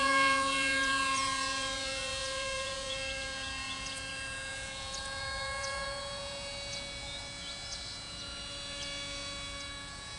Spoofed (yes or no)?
yes